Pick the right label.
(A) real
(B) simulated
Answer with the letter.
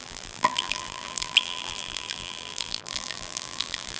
B